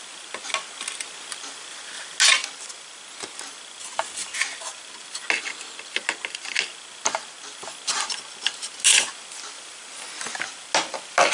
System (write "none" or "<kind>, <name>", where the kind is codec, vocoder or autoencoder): none